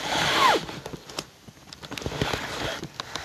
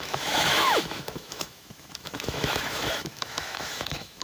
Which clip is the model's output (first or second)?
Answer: second